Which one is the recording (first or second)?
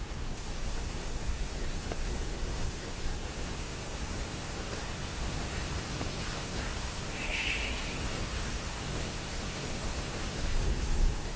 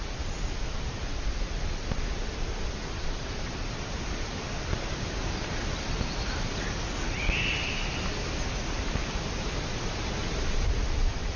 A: second